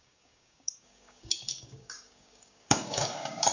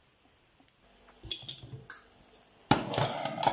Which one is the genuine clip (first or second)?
second